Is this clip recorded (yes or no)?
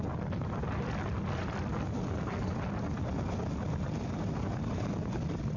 yes